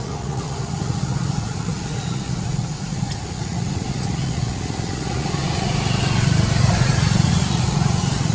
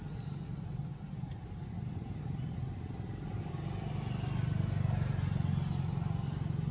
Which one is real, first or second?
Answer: second